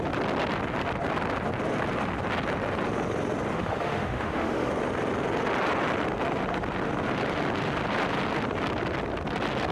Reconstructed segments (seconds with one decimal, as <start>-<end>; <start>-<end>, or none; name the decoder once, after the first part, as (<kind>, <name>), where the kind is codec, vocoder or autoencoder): 3.5-4.7 (autoencoder, DAC-VAE)